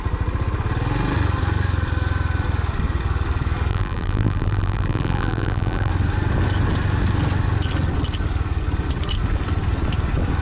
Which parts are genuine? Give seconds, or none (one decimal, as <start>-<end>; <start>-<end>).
0.0-3.7; 5.9-10.4

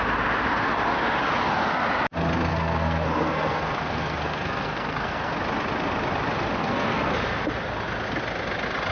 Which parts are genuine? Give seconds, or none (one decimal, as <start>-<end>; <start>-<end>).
0.0-2.5; 5.3-6.6; 7.1-8.9

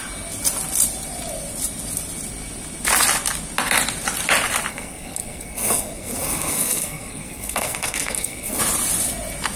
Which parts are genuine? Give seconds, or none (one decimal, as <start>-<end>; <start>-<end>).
0.0-4.7; 8.6-9.6

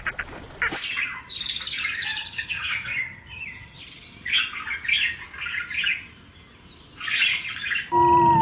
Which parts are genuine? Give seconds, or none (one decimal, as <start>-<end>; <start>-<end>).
0.0-2.2; 3.8-8.4

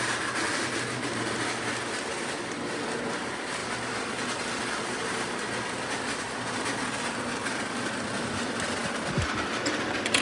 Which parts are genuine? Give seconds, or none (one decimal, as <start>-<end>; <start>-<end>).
0.0-10.2